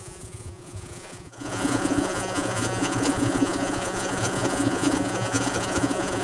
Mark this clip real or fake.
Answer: fake